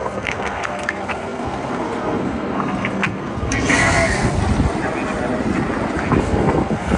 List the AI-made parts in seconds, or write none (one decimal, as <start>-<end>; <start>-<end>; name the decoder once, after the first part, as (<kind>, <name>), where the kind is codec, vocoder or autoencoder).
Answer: 0.0-4.4 (codec, SNAC); 6.2-7.0

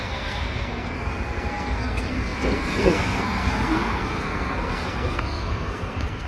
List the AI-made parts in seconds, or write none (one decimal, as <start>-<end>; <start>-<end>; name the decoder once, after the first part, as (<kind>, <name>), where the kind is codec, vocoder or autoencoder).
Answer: 0.0-6.3 (codec, SNAC)

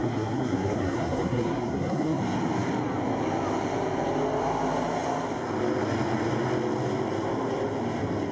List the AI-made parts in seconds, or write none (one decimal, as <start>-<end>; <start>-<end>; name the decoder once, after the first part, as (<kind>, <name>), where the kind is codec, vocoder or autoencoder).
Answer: 0.0-2.2 (codec, SNAC)

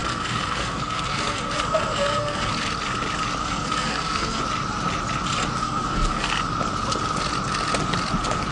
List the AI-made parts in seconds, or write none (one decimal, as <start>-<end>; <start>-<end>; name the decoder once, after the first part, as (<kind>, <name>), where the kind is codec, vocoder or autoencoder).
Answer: 0.0-2.5 (codec, SNAC); 3.4-4.4; 5.6-6.3

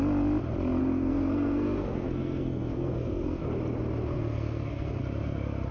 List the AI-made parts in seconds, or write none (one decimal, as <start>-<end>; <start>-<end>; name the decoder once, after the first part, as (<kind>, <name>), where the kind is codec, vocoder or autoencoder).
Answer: 0.8-3.4 (codec, SNAC); 4.1-5.0